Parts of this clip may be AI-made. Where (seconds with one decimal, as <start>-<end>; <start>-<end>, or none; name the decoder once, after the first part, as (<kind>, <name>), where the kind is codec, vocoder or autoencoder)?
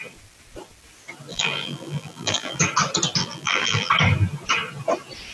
1.3-2.6 (vocoder, BigVGAN v2); 3.2-3.9